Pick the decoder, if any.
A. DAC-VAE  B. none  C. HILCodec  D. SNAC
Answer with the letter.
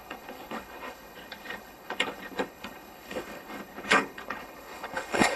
C